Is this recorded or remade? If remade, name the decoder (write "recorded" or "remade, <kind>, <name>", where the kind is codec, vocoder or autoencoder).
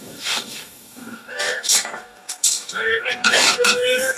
remade, codec, DAC